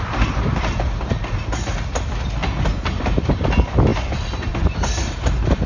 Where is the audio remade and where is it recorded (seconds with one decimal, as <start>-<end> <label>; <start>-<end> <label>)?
0.0-5.7 recorded